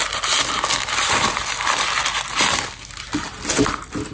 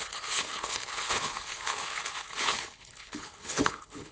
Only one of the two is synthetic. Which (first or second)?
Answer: second